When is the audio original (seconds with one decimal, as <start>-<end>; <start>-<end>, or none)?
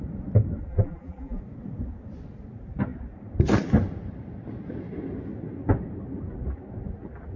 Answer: 0.0-0.7; 1.4-7.4